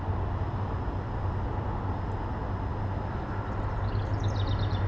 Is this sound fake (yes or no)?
no